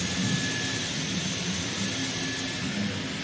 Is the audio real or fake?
real